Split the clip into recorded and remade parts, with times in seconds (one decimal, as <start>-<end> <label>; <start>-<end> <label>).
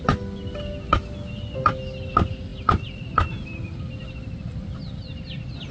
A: 0.0-5.7 recorded